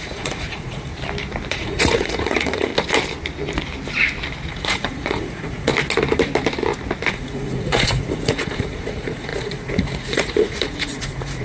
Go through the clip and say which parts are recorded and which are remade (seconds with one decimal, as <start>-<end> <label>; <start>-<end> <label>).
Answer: 0.0-0.9 remade; 0.9-1.5 recorded; 1.5-2.7 remade; 2.7-4.5 recorded; 4.5-5.7 remade; 5.7-7.1 recorded; 7.1-11.4 remade